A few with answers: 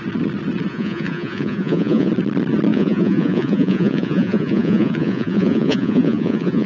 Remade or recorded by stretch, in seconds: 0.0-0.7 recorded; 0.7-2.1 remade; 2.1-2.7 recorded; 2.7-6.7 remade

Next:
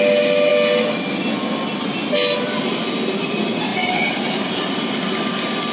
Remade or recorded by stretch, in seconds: 0.0-3.7 recorded; 3.7-5.0 remade; 5.0-5.7 recorded

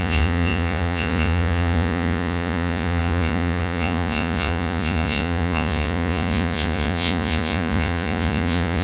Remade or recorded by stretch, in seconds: 0.0-8.8 remade